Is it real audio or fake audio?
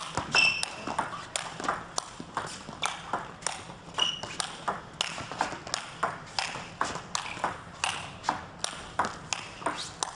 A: real